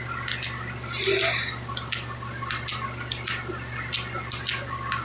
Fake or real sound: real